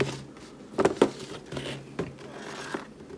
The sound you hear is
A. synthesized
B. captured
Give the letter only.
B